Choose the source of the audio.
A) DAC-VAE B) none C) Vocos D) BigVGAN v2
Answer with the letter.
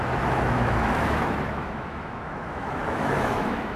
A